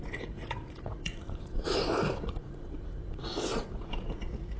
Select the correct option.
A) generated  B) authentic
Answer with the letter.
A